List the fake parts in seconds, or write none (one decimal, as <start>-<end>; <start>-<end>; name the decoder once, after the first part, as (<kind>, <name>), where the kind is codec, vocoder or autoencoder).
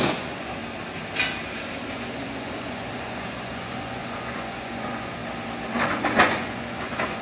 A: 0.0-0.6 (vocoder, Vocos); 1.9-5.2; 5.9-7.2